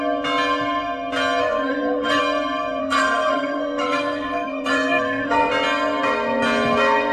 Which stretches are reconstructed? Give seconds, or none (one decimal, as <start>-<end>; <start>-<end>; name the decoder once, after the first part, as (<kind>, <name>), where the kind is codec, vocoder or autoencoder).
1.4-2.2 (codec, SNAC); 2.8-5.5